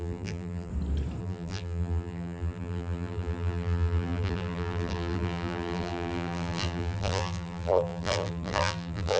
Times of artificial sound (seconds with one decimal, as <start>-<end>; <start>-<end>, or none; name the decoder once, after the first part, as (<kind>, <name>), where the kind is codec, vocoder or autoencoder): 0.0-0.7 (vocoder, BigVGAN v2); 1.2-9.2